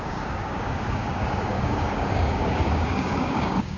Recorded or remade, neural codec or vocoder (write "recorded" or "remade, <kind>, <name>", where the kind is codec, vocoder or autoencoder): remade, codec, DAC